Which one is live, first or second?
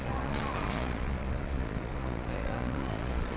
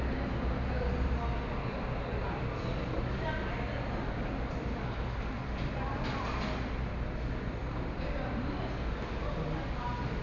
second